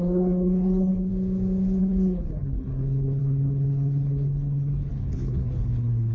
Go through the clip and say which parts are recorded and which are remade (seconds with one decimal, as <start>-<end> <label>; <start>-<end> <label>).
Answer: 0.0-1.1 remade; 1.1-1.8 recorded; 1.8-6.1 remade